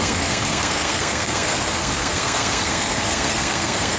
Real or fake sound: fake